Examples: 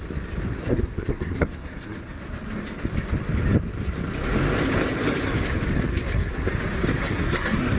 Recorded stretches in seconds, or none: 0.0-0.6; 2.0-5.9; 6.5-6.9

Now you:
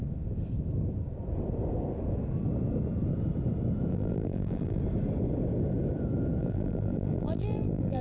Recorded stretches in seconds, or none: 0.0-3.9; 4.8-6.4

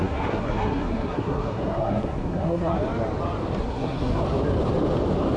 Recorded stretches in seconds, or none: 2.7-3.6; 4.2-5.4